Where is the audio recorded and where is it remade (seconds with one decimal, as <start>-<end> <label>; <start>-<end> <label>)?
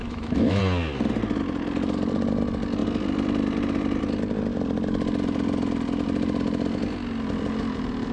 0.0-0.6 remade; 0.6-8.1 recorded